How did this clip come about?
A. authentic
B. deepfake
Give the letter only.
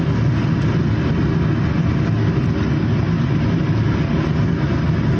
A